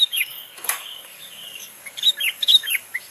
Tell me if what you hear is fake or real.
fake